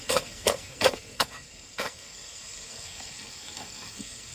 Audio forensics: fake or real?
fake